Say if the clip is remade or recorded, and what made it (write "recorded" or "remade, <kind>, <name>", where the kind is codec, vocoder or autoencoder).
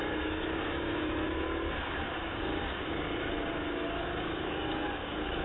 remade, codec, DAC